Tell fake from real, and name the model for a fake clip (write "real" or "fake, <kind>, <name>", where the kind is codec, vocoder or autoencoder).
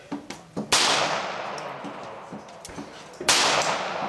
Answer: real